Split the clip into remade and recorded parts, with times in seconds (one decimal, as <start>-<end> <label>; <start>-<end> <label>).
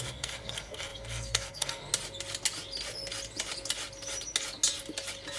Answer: 0.0-1.9 remade; 1.9-5.4 recorded